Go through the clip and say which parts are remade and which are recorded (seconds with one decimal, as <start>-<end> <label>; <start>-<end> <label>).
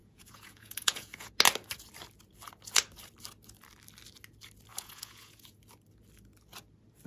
0.0-1.3 remade; 1.3-4.7 recorded; 4.7-5.6 remade; 5.6-7.1 recorded